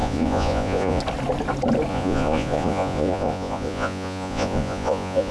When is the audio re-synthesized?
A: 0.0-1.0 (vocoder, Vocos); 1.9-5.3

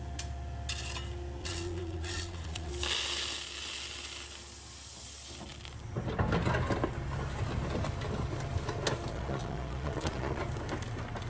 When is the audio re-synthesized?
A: 1.4-2.7 (vocoder, Vocos); 9.1-10.4

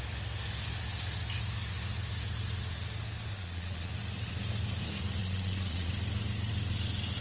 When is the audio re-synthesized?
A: 3.3-3.9 (vocoder, Vocos); 5.2-5.9

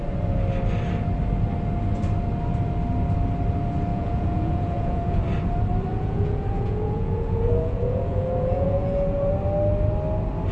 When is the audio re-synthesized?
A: 3.9-5.2 (vocoder, Vocos); 5.9-9.3

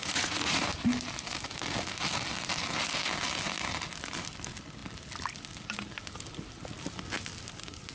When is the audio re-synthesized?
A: 0.0-0.7 (vocoder, Vocos)

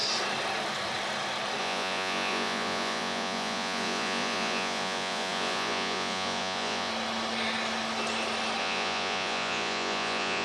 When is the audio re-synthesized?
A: 1.6-6.9 (vocoder, Vocos); 8.6-10.4